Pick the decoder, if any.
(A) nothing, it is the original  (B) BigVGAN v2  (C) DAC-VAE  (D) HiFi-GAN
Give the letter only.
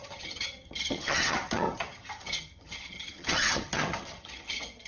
D